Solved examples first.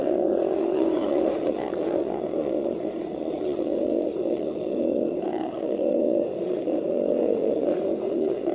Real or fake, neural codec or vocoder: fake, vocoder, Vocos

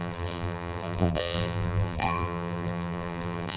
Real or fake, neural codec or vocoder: fake, vocoder, BigVGAN v2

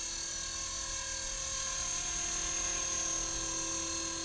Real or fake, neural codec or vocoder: real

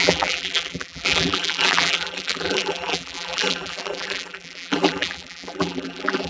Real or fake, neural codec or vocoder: fake, vocoder, BigVGAN v2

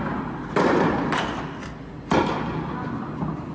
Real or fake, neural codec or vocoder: real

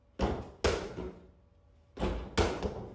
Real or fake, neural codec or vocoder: real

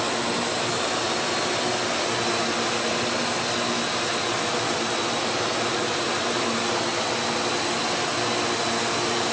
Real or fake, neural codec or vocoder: real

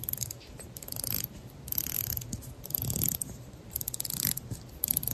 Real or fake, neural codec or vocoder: real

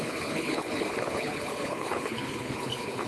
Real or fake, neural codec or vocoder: fake, codec, HILCodec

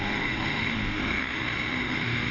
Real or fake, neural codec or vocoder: fake, autoencoder, DAC-VAE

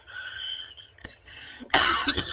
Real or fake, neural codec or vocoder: fake, vocoder, HiFi-GAN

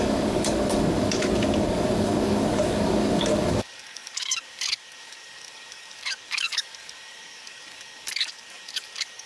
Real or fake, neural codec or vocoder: fake, codec, DAC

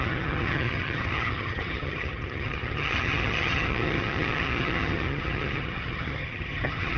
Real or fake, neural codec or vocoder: fake, vocoder, HiFi-GAN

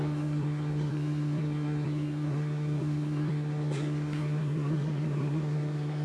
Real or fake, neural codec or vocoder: fake, codec, SNAC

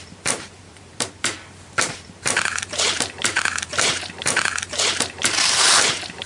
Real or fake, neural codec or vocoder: fake, vocoder, BigVGAN v2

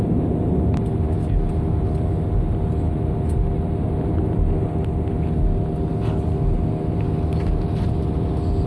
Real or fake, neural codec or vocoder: real